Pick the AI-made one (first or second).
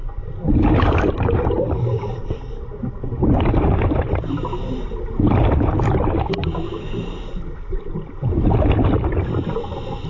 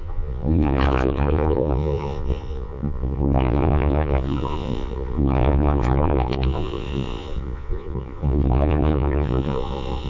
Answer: second